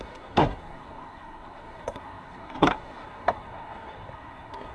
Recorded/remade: remade